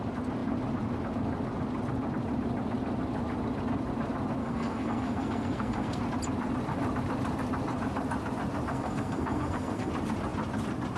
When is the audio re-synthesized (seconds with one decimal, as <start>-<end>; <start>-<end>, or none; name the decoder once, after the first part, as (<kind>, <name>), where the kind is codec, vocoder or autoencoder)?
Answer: 4.4-6.0 (codec, SNAC); 8.7-9.9

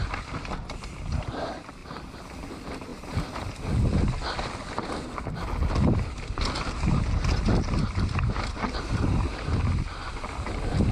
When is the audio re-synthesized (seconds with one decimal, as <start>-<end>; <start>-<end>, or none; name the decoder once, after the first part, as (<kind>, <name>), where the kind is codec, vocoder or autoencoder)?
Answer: 1.8-2.5 (vocoder, BigVGAN v2); 2.9-4.5

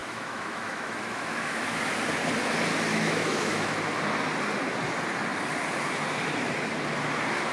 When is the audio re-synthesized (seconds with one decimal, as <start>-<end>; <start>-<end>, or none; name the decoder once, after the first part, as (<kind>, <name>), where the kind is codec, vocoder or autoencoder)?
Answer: 0.0-1.8 (autoencoder, DAC-VAE); 2.9-3.8

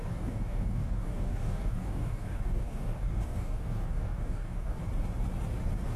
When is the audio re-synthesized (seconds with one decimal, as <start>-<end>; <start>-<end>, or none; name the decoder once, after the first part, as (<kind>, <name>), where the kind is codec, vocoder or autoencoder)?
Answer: 0.0-4.8 (codec, DAC)

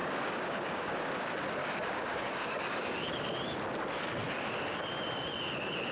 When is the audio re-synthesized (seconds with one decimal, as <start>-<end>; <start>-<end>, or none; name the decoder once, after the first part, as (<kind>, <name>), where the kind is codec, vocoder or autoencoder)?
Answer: 0.0-0.9 (codec, DAC); 1.6-3.1